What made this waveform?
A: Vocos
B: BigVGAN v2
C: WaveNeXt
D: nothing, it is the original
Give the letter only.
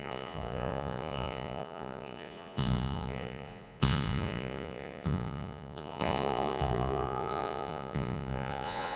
A